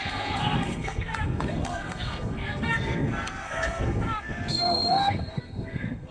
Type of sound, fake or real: fake